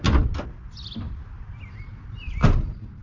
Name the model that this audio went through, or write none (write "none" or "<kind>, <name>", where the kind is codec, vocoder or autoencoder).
none